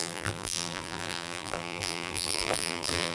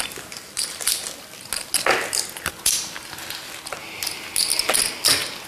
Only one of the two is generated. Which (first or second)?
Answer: first